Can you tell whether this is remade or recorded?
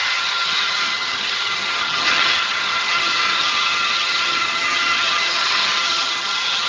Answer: remade